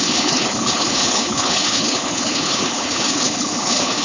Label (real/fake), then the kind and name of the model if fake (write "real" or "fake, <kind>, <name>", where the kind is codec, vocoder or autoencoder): fake, codec, HILCodec